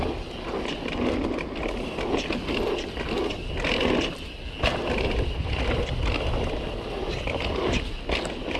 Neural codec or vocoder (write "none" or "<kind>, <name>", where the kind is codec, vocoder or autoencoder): none